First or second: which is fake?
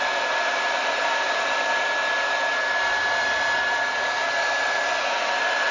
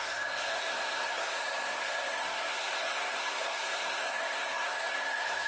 second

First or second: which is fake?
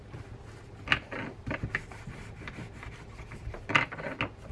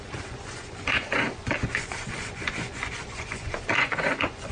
second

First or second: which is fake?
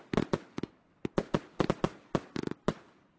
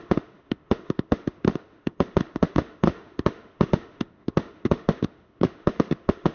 second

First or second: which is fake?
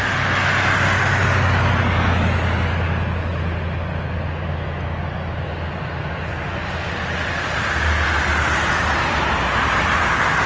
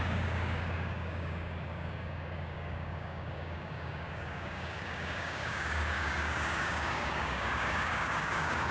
second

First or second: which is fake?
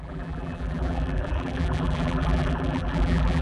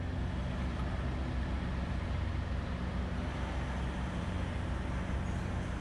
first